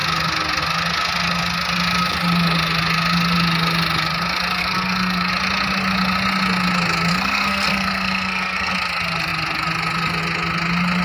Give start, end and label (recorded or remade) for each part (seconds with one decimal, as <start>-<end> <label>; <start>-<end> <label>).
0.0-4.6 recorded; 4.6-5.3 remade; 5.3-7.1 recorded; 7.1-8.7 remade; 8.7-11.0 recorded